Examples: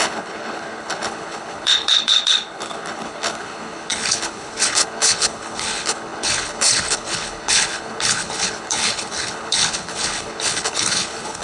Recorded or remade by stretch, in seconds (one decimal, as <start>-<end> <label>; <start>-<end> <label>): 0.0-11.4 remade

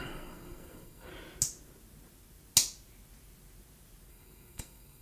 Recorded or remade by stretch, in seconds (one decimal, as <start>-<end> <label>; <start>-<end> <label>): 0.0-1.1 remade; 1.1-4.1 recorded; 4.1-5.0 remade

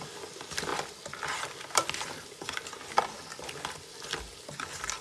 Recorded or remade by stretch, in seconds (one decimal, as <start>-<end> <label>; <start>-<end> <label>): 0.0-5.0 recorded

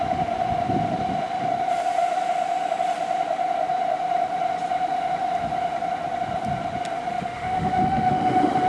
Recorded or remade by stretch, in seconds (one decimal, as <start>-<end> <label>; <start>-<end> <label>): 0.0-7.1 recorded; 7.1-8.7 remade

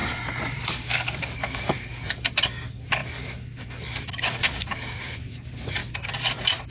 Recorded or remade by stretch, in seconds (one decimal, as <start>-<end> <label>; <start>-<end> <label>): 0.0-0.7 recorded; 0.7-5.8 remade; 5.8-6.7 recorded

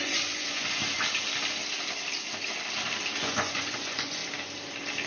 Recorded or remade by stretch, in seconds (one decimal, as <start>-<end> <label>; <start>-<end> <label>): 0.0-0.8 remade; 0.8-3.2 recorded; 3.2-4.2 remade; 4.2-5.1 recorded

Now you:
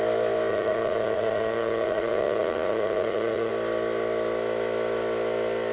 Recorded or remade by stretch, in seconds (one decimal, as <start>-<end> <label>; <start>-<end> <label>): 0.0-0.5 recorded; 0.5-3.5 remade; 3.5-5.7 recorded